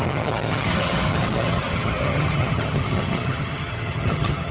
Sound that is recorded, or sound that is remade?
remade